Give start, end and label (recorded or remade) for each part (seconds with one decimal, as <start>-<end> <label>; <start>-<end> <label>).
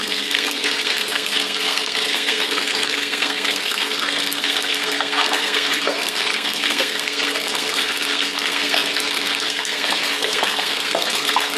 0.0-11.6 remade